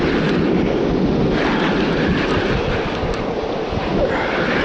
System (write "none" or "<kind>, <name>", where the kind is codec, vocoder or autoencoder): none